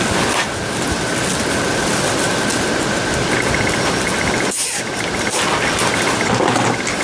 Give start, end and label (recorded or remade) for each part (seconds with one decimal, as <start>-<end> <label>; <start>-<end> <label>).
0.0-7.0 recorded